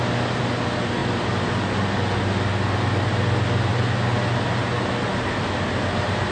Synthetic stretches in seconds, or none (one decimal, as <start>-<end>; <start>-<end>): none